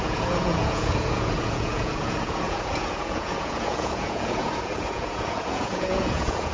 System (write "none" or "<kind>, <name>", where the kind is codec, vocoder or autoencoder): vocoder, Vocos